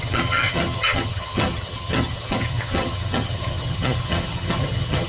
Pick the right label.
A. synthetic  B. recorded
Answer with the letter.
A